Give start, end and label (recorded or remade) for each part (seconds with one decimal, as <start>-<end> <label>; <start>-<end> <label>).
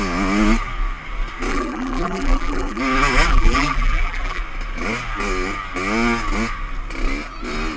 0.0-1.5 recorded; 1.5-2.8 remade; 2.8-3.3 recorded; 3.3-4.4 remade; 4.4-7.8 recorded